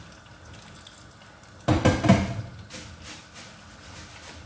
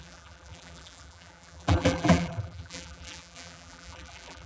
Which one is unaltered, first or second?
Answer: first